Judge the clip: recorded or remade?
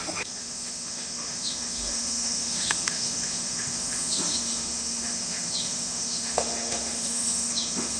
remade